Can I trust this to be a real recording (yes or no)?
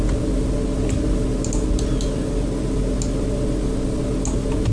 yes